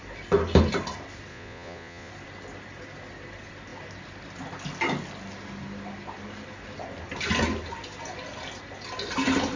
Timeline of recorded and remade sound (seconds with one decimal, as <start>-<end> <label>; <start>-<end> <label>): 0.0-1.3 recorded; 1.3-2.1 remade; 2.1-9.6 recorded